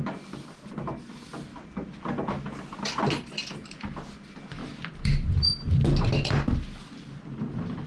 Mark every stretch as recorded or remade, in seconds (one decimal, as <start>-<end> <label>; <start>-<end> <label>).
0.0-7.9 recorded